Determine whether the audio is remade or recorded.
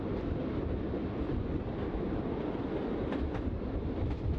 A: recorded